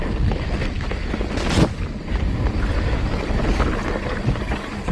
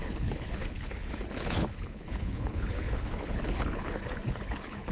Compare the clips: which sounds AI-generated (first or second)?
second